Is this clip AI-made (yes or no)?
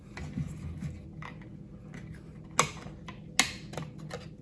no